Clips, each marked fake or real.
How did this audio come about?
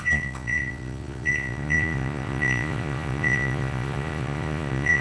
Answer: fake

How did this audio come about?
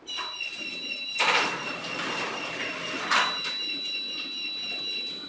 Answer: real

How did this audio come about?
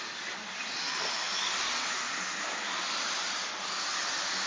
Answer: real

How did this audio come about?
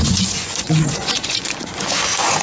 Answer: fake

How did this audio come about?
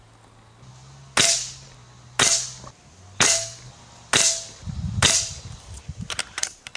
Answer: real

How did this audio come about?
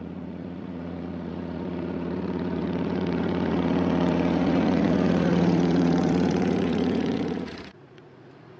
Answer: fake